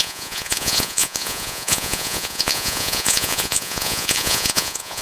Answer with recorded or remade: remade